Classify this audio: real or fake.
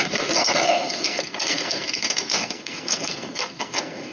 fake